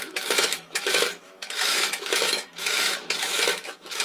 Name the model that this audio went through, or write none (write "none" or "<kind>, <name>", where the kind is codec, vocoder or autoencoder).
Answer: autoencoder, DAC-VAE